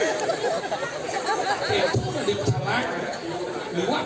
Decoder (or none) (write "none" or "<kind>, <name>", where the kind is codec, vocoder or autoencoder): none